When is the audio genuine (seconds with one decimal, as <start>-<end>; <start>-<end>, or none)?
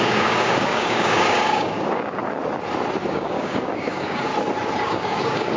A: 2.2-3.1; 4.3-4.8